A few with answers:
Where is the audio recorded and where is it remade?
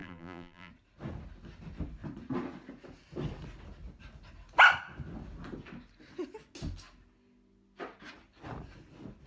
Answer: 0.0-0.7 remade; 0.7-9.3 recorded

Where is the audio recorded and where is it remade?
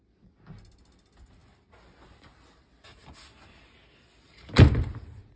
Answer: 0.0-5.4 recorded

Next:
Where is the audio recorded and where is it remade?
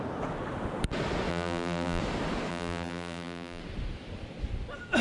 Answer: 0.0-1.3 recorded; 1.3-2.0 remade; 2.0-2.5 recorded; 2.5-3.6 remade; 3.6-5.0 recorded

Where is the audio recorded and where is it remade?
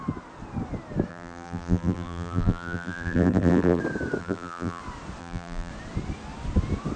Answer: 0.0-1.1 recorded; 1.1-3.8 remade; 3.8-4.2 recorded; 4.2-4.8 remade; 4.8-5.2 recorded; 5.2-5.7 remade; 5.7-7.0 recorded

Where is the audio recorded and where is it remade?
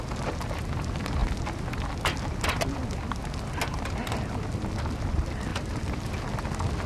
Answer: 0.0-5.5 recorded; 5.5-6.2 remade; 6.2-6.9 recorded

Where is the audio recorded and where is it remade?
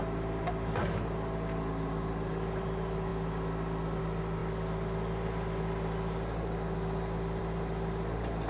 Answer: 0.0-8.5 recorded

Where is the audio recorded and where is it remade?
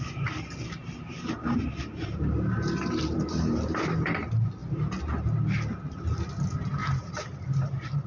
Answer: 0.0-0.8 recorded; 0.8-4.1 remade; 4.1-6.8 recorded; 6.8-8.1 remade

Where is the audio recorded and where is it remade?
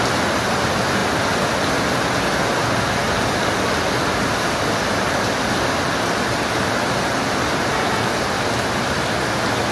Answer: 0.0-9.7 recorded